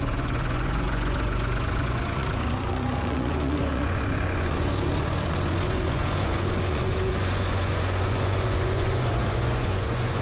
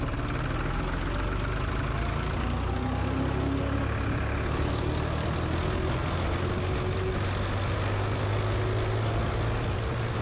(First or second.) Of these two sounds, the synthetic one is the first